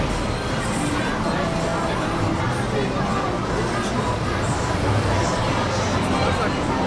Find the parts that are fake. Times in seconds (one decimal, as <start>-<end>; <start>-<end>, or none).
none